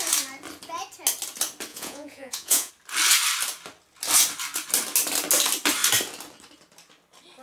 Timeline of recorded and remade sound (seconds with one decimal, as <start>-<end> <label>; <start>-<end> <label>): 0.0-1.7 recorded; 1.7-2.7 remade; 2.7-7.4 recorded